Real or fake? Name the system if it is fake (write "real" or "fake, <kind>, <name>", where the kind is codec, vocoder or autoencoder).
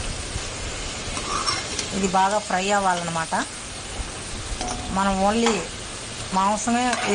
real